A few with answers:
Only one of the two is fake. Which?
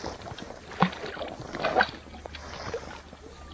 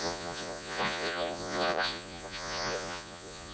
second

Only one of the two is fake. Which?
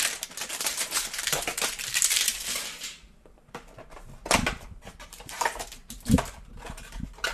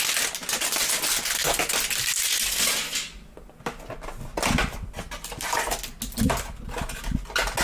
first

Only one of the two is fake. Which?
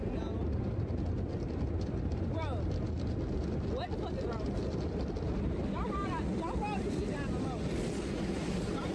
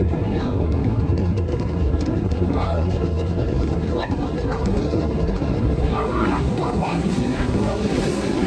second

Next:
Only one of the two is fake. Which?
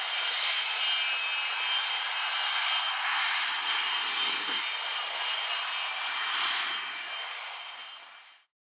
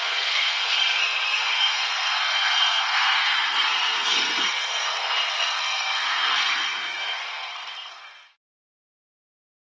second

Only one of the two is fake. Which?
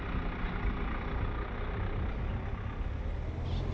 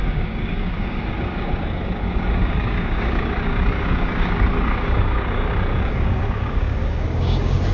second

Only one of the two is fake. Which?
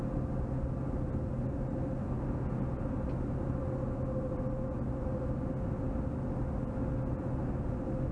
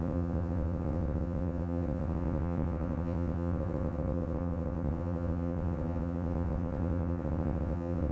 second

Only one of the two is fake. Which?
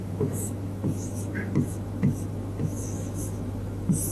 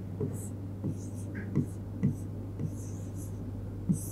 first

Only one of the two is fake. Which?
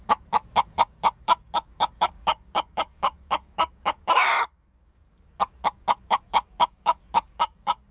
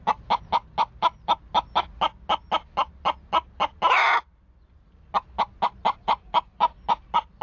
first